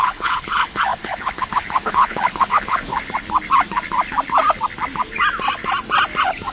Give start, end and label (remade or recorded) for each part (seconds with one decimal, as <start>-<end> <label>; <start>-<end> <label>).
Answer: 0.0-2.9 remade; 2.9-6.5 recorded